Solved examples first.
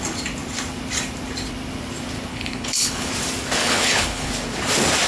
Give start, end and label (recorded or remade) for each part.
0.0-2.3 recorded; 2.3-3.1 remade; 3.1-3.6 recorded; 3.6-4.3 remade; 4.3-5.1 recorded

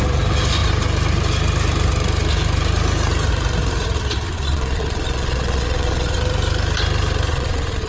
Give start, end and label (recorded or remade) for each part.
0.0-4.3 recorded; 4.3-6.2 remade; 6.2-7.3 recorded; 7.3-7.9 remade

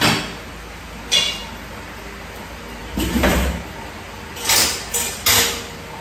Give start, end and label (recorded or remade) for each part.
0.0-6.0 recorded

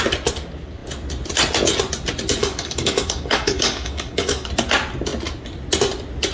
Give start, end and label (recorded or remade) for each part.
0.0-2.4 recorded; 2.4-4.5 remade; 4.5-6.3 recorded

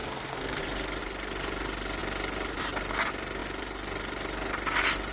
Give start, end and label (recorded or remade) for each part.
0.0-0.6 remade; 0.6-5.1 recorded

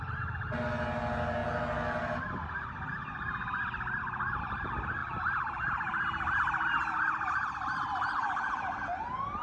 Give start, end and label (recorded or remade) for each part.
0.0-9.4 recorded

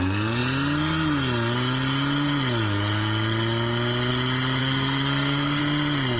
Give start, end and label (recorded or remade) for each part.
0.0-4.6 recorded; 4.6-5.6 remade; 5.6-6.2 recorded